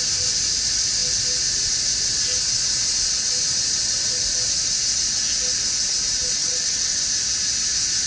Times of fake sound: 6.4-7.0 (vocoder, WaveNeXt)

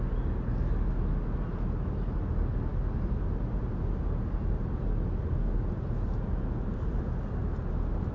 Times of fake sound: none

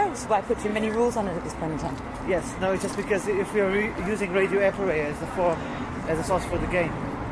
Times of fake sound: none

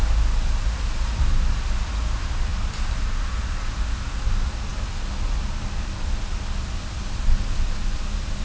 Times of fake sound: none